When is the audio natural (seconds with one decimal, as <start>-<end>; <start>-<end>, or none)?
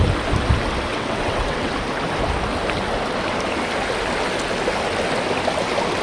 0.0-0.9; 1.7-6.0